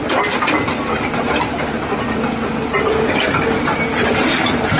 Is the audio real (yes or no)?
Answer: yes